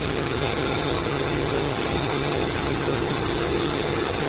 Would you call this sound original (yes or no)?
no